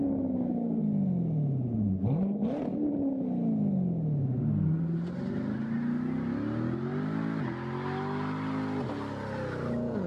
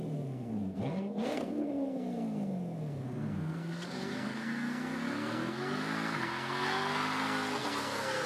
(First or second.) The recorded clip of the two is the first